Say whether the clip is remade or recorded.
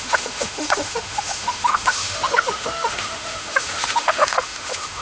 remade